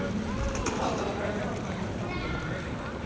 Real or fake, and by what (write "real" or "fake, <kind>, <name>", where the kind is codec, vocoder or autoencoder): real